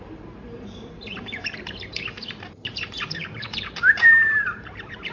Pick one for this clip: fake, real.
fake